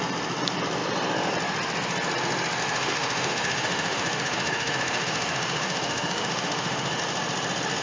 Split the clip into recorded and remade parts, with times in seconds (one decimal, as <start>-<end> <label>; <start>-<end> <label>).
0.0-2.6 recorded; 2.6-7.0 remade; 7.0-7.8 recorded